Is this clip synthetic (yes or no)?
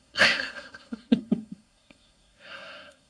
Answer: yes